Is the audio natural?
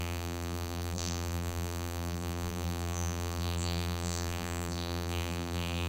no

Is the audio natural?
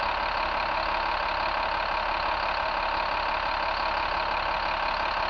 yes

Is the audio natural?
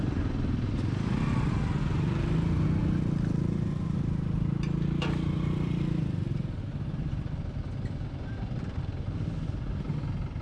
yes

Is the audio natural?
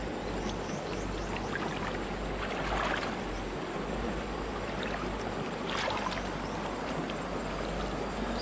yes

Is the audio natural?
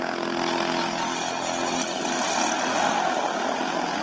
yes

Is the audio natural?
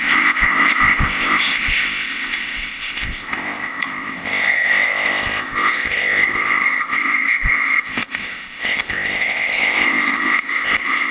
no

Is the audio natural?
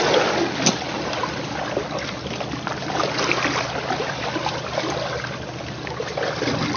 yes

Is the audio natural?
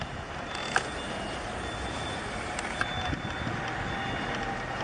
yes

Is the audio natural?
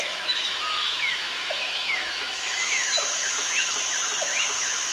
no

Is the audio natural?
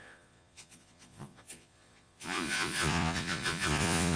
no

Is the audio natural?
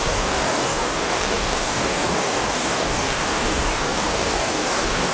no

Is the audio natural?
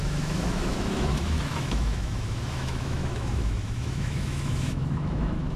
no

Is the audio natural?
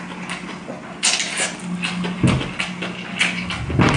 yes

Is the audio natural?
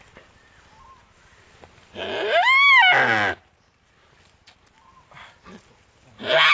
yes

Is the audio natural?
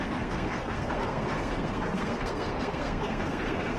no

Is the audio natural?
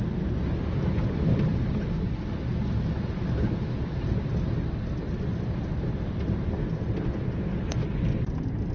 yes